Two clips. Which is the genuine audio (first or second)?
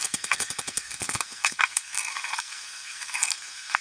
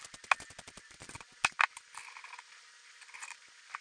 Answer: second